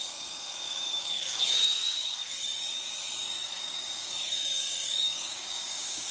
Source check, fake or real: fake